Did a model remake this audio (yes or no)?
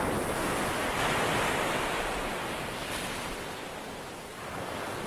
no